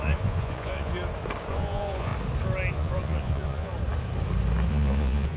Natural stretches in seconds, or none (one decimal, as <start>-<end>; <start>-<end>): 0.9-1.5; 2.1-2.7; 3.7-4.7